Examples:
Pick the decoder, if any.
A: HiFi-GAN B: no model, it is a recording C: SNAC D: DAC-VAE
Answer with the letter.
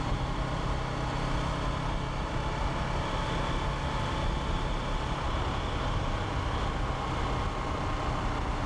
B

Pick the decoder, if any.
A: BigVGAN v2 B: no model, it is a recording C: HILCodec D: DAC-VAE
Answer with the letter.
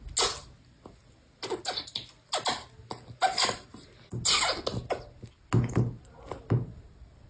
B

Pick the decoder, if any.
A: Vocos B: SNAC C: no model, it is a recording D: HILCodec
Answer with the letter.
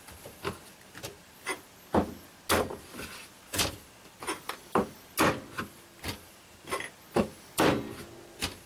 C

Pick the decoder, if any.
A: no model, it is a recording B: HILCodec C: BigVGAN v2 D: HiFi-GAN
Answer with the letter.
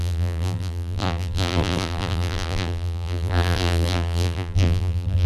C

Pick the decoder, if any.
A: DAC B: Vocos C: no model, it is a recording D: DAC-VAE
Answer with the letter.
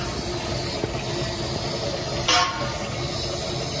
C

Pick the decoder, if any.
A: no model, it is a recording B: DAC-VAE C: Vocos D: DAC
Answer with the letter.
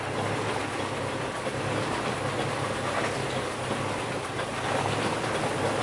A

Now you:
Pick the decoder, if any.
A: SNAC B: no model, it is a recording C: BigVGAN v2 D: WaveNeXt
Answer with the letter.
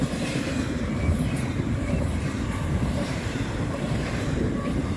C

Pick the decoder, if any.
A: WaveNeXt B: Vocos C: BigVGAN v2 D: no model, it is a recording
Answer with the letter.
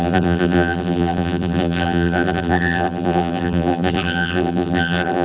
C